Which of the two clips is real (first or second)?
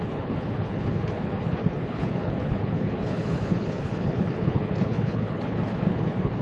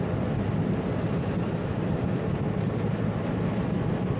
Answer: second